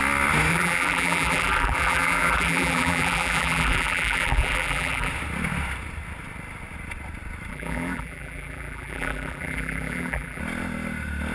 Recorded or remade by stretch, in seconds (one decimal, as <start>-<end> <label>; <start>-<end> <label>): 0.0-0.5 recorded; 0.5-5.1 remade; 5.1-7.5 recorded; 7.5-10.4 remade; 10.4-11.3 recorded

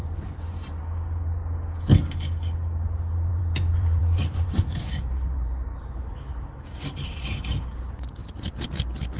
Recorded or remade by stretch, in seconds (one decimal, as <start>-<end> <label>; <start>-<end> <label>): 0.0-0.8 remade; 0.8-3.3 recorded; 3.3-7.2 remade; 7.2-8.2 recorded; 8.2-8.7 remade; 8.7-9.2 recorded

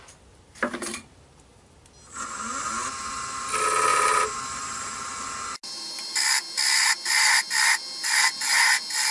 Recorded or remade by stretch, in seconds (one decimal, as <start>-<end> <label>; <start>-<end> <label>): 0.0-3.9 recorded; 3.9-5.2 remade; 5.2-9.1 recorded

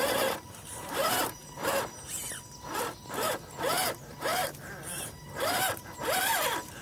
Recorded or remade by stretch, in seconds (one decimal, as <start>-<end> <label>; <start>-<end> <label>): 0.0-6.8 remade

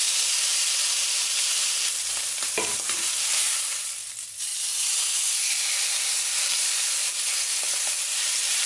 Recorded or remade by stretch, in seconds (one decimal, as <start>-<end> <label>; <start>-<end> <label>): 0.0-4.5 remade; 4.5-6.3 recorded; 6.3-7.0 remade; 7.0-8.1 recorded; 8.1-8.7 remade

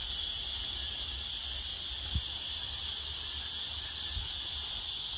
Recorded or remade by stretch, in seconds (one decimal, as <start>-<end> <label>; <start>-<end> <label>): 0.0-5.2 recorded

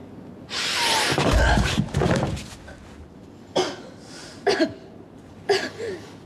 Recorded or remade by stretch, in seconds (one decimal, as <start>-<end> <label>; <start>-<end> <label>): 0.0-1.1 recorded; 1.1-1.8 remade; 1.8-4.2 recorded; 4.2-5.3 remade; 5.3-6.3 recorded